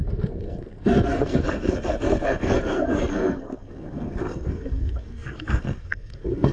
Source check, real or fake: fake